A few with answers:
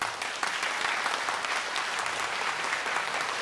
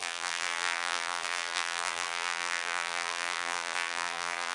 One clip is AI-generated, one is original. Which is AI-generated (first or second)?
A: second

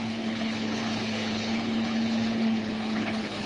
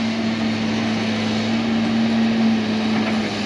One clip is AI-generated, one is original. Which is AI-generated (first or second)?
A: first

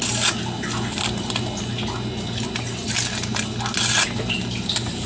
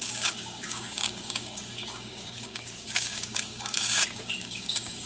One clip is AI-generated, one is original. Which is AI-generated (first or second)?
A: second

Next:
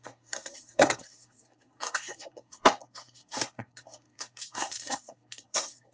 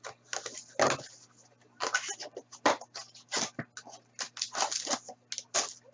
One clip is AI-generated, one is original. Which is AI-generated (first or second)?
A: first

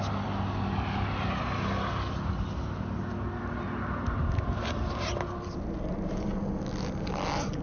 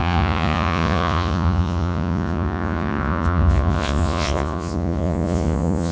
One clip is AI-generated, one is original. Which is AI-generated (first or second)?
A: second